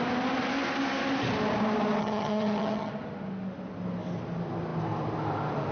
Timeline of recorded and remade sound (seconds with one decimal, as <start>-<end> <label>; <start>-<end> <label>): 0.0-2.0 recorded; 2.0-2.9 remade; 2.9-5.7 recorded